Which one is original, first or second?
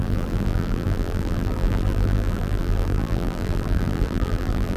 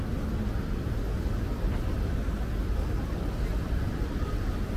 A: second